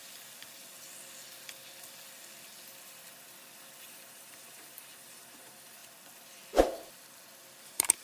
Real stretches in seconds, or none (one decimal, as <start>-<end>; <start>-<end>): 0.0-3.9; 5.8-7.6